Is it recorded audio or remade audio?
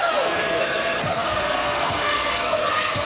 remade